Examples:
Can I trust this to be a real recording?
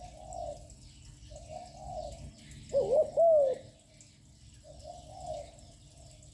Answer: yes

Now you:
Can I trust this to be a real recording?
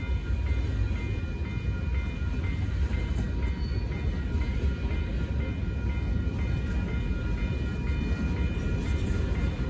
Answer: yes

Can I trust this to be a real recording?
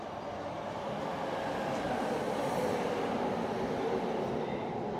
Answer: yes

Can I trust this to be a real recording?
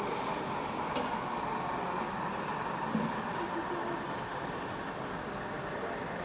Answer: yes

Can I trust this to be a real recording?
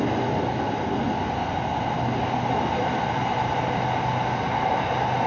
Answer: yes